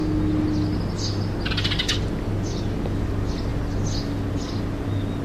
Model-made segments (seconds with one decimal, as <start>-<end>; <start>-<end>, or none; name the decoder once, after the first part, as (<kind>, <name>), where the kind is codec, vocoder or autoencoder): none